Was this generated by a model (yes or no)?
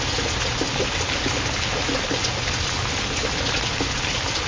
no